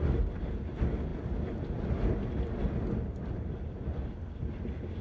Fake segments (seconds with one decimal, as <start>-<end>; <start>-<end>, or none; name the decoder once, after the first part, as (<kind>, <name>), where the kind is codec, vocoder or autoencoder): none